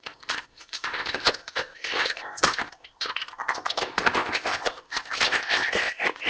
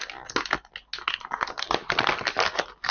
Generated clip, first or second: first